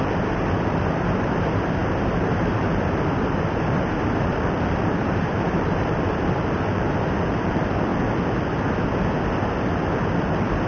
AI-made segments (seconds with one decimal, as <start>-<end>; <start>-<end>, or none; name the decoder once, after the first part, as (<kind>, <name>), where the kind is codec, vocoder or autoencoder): 0.0-7.9 (vocoder, BigVGAN v2)